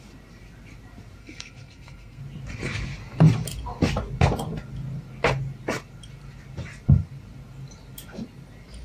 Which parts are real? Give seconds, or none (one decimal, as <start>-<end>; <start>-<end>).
0.0-1.2; 2.2-8.8